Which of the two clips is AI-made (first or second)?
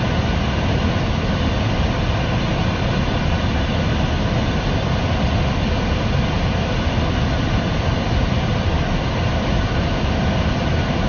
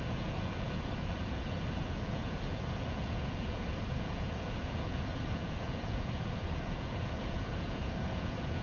second